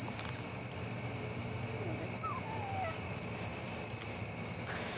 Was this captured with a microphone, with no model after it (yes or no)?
yes